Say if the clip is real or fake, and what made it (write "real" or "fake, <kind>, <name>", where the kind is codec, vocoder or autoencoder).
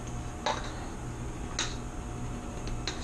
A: real